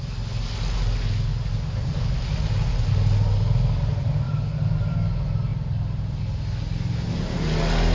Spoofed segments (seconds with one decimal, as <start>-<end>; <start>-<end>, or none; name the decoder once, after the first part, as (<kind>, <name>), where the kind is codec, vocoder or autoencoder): none